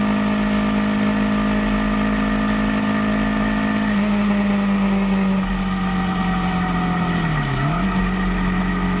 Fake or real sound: real